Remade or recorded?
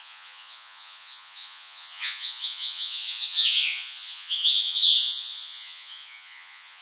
remade